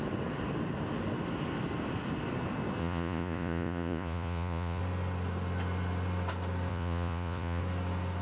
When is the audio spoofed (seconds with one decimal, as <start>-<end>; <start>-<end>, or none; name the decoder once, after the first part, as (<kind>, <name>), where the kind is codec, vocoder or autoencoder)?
2.8-4.8 (vocoder, Vocos); 6.7-7.6